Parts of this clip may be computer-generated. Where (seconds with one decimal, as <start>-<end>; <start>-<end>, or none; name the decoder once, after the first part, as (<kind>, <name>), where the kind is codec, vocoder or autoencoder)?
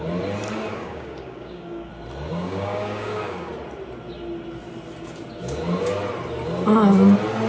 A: 0.7-1.9 (codec, DAC); 2.3-3.5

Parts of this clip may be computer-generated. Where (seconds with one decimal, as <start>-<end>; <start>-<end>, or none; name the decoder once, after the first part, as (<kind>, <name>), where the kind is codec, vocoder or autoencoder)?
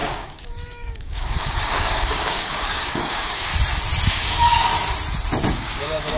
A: 0.0-3.5 (codec, DAC); 4.1-4.7; 5.5-6.2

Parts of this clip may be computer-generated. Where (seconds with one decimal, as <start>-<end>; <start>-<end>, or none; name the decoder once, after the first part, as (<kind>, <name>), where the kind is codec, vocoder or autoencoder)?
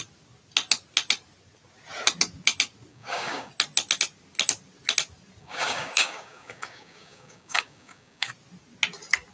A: 2.9-3.5 (codec, DAC); 5.4-8.3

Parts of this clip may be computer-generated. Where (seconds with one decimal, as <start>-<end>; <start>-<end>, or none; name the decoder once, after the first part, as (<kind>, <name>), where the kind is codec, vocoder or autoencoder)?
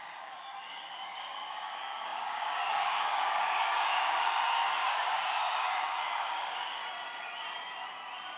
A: 0.0-6.8 (codec, DAC)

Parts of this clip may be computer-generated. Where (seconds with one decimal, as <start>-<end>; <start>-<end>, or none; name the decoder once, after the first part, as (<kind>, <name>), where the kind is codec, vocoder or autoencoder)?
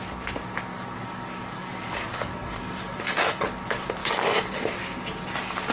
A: 0.7-3.4 (codec, DAC); 4.0-4.6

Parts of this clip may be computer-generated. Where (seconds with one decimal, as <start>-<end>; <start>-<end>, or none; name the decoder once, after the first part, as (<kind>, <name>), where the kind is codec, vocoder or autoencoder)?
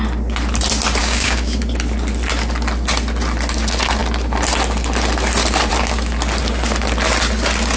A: 1.0-1.6 (codec, DAC)